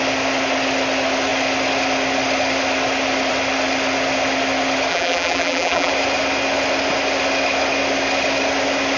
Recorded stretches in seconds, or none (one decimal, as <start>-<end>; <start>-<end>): 0.0-4.9; 5.9-9.0